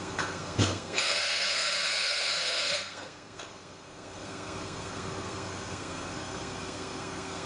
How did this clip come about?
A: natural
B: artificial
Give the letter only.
B